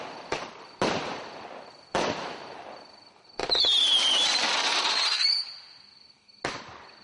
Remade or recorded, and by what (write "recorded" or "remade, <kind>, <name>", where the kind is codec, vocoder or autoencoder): recorded